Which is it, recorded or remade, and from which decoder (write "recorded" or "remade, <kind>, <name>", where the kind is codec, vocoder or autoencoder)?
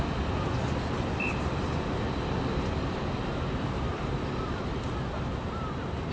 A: remade, vocoder, BigVGAN v2